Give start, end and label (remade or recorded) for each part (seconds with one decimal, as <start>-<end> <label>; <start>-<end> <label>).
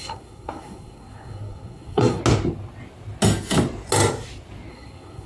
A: 0.0-2.2 remade; 2.2-4.7 recorded; 4.7-5.3 remade